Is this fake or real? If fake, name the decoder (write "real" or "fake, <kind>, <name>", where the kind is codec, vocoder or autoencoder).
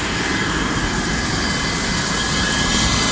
real